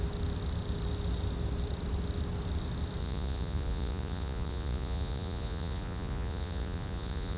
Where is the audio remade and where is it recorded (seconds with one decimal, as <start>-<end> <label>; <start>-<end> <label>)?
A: 0.0-3.0 recorded; 3.0-7.4 remade